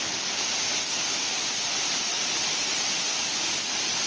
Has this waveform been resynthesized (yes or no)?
no